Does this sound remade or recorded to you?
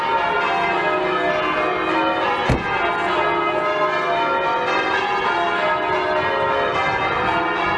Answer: recorded